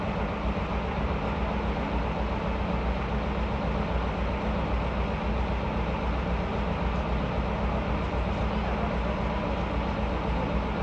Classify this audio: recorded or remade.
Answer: recorded